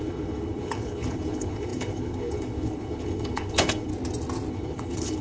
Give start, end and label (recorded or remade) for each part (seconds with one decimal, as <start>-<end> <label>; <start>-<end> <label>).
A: 0.0-3.9 remade; 3.9-4.5 recorded; 4.5-5.2 remade